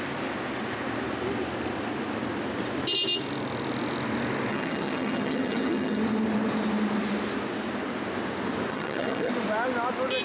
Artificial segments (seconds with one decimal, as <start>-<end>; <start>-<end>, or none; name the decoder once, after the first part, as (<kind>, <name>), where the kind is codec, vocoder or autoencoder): 4.5-6.0 (vocoder, HiFi-GAN); 8.7-9.3